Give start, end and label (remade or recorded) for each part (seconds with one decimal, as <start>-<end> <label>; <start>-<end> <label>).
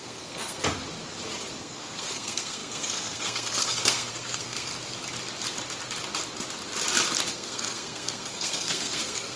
0.0-0.6 remade; 0.6-1.6 recorded; 1.6-4.7 remade; 4.7-7.3 recorded; 7.3-9.4 remade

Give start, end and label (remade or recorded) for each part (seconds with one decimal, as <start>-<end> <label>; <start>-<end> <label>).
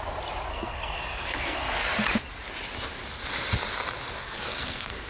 0.0-0.5 recorded; 0.5-1.6 remade; 1.6-4.1 recorded; 4.1-5.1 remade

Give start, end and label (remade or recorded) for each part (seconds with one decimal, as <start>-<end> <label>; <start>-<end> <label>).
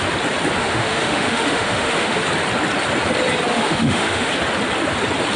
0.0-0.6 recorded; 0.6-2.2 remade; 2.2-3.5 recorded; 3.5-4.3 remade; 4.3-5.4 recorded